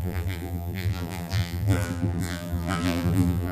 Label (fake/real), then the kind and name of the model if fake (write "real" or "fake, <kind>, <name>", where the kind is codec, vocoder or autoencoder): fake, vocoder, BigVGAN v2